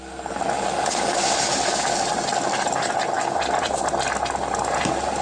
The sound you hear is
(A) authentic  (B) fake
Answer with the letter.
A